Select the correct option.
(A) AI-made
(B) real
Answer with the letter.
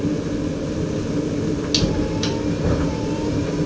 B